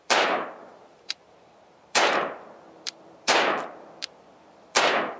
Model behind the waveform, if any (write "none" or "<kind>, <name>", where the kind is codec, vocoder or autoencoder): vocoder, BigVGAN v2